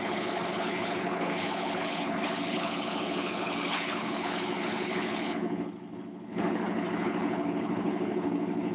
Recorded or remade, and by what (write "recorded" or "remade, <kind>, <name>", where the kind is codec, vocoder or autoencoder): remade, codec, HILCodec